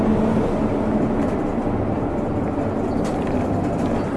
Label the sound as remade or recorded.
recorded